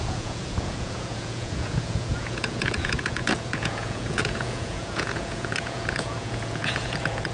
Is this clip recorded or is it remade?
remade